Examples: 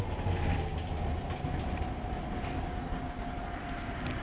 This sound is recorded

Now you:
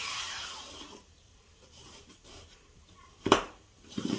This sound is remade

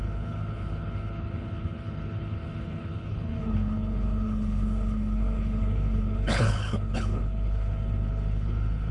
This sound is remade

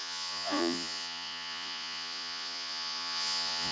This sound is remade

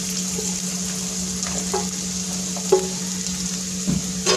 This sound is recorded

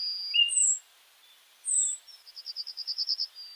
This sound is recorded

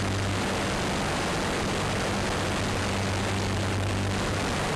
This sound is recorded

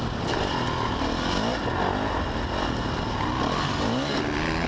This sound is recorded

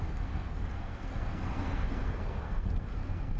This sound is remade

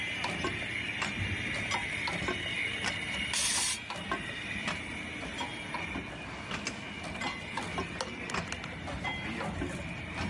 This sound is recorded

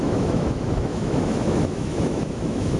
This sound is remade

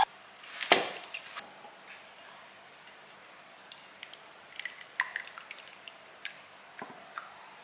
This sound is recorded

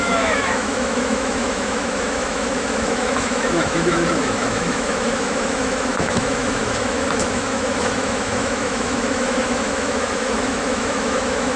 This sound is remade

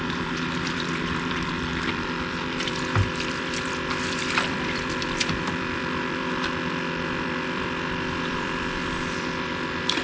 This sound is remade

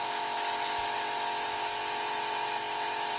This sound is recorded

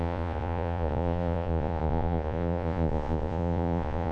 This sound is remade